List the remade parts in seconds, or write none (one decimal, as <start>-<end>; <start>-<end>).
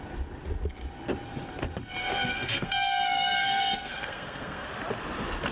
2.0-4.7